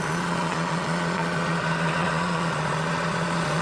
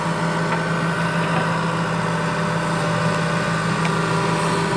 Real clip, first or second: second